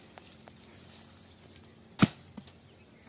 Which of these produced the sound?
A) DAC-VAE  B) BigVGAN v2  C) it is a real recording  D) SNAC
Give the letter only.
C